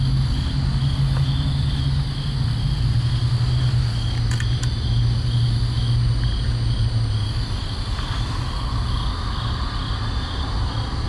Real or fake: real